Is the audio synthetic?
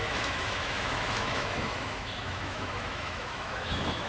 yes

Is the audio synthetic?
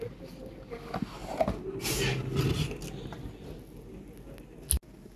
no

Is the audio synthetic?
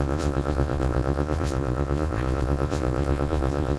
yes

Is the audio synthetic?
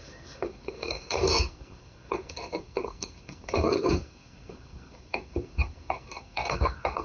yes